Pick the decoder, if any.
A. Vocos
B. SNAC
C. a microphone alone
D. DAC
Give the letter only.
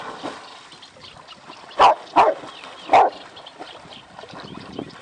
C